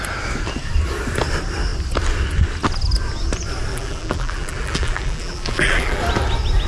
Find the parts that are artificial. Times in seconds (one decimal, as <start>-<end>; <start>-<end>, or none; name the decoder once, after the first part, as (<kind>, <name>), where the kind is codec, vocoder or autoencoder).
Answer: 3.7-6.0 (vocoder, BigVGAN v2)